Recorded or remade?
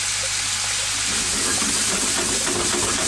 recorded